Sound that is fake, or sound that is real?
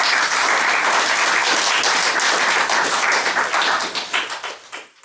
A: real